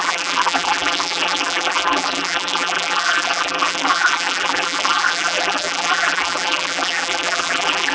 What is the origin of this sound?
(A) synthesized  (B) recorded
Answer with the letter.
A